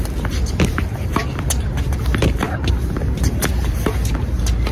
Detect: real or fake real